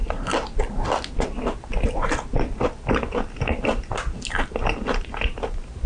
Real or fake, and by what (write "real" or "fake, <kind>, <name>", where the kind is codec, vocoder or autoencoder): real